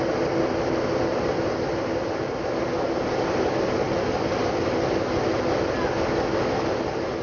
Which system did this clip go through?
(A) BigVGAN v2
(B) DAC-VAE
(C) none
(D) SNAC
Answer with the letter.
C